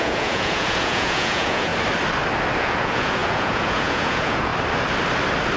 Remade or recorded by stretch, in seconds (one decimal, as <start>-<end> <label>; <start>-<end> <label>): 0.0-1.7 remade; 1.7-2.6 recorded; 2.6-4.5 remade; 4.5-5.6 recorded